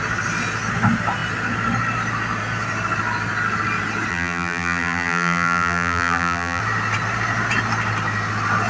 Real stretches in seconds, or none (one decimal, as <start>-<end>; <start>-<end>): 0.0-4.1; 6.6-8.7